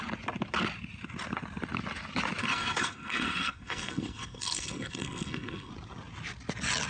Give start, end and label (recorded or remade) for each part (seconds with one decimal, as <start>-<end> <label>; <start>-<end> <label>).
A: 0.0-2.4 recorded; 2.4-5.7 remade; 5.7-6.9 recorded